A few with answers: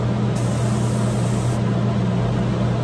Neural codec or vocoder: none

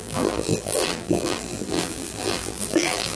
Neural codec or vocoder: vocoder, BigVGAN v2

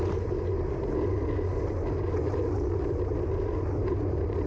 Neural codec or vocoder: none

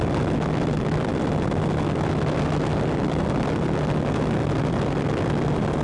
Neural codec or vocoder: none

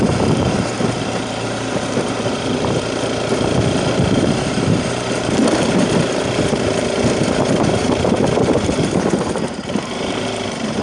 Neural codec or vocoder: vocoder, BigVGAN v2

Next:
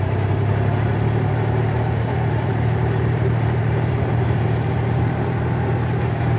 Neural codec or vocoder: vocoder, BigVGAN v2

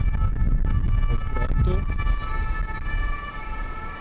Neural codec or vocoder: none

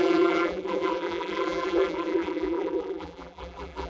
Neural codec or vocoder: vocoder, BigVGAN v2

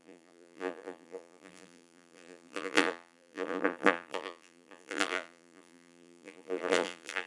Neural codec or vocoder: vocoder, BigVGAN v2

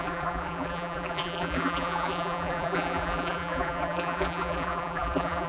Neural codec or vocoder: vocoder, BigVGAN v2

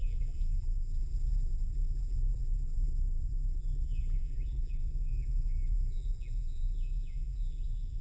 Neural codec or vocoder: vocoder, BigVGAN v2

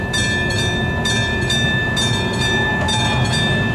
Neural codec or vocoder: none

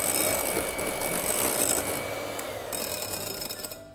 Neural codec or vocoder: vocoder, BigVGAN v2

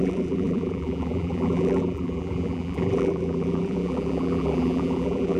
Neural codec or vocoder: vocoder, BigVGAN v2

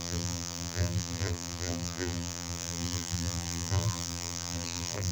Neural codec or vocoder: vocoder, BigVGAN v2